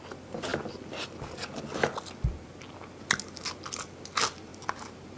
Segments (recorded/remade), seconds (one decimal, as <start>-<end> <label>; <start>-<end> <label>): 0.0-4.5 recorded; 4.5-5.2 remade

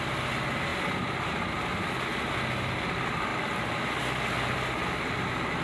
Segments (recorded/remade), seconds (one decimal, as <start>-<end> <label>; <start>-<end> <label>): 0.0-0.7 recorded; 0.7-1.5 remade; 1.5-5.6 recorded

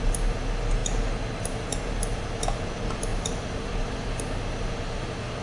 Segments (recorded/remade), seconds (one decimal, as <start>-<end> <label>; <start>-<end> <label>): 0.0-3.1 recorded; 3.1-4.2 remade; 4.2-5.4 recorded

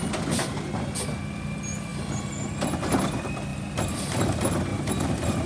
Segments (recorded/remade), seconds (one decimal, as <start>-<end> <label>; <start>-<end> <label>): 0.0-3.5 recorded; 3.5-4.2 remade; 4.2-4.7 recorded; 4.7-5.5 remade

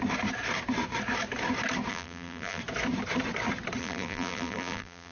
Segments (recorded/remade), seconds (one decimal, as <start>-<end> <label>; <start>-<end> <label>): 0.0-1.9 recorded; 1.9-2.6 remade; 2.6-3.8 recorded; 3.8-5.1 remade